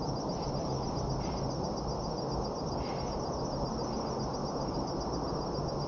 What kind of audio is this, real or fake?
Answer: real